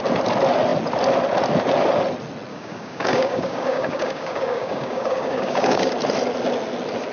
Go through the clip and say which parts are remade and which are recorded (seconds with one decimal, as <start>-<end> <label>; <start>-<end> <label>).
0.0-2.5 recorded; 2.5-5.9 remade; 5.9-7.1 recorded